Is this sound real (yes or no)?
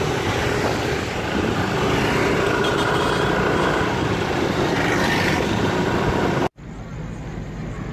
yes